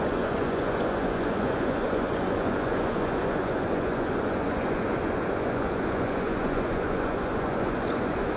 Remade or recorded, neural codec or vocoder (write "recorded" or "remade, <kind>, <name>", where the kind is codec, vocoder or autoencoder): remade, vocoder, Vocos